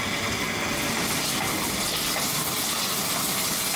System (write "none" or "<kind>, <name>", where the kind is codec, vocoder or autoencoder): none